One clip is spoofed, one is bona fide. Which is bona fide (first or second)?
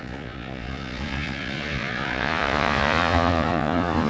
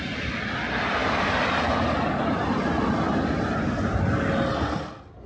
second